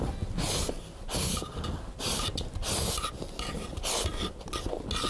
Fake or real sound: real